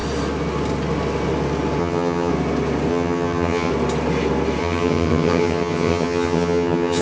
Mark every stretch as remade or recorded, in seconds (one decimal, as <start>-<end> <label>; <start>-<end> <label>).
0.0-1.8 recorded; 1.8-2.3 remade; 2.3-2.9 recorded; 2.9-3.7 remade; 3.7-4.6 recorded; 4.6-7.0 remade

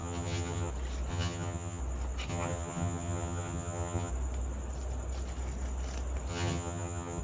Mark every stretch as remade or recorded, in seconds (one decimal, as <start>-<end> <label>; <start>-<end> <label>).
0.0-0.7 remade; 0.7-1.1 recorded; 1.1-1.8 remade; 1.8-2.3 recorded; 2.3-4.1 remade; 4.1-6.3 recorded; 6.3-7.2 remade

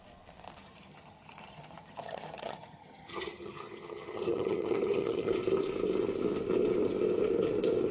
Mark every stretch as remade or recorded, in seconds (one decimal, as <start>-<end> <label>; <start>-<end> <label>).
0.0-0.6 recorded; 0.6-5.3 remade; 5.3-7.9 recorded

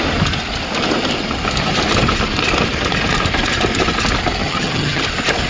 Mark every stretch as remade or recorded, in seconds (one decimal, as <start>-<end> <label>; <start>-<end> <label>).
0.0-4.4 recorded; 4.4-5.0 remade; 5.0-5.5 recorded

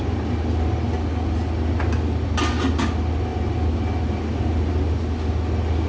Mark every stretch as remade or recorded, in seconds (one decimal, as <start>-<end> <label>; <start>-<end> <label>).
0.0-5.9 recorded

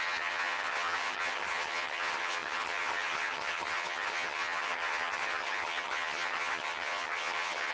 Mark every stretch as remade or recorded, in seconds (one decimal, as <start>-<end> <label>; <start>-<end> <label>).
0.0-7.7 remade

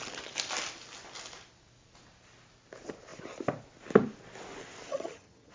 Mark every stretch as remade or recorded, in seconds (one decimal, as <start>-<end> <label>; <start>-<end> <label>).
0.0-4.9 recorded; 4.9-5.5 remade